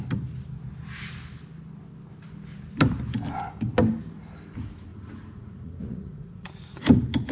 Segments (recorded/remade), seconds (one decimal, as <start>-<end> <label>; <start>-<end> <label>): 0.0-4.9 recorded; 4.9-6.5 remade; 6.5-7.3 recorded